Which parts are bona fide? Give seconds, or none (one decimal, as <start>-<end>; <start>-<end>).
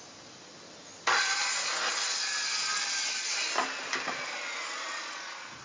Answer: 0.0-5.6